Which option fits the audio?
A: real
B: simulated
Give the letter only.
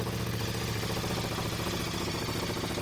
A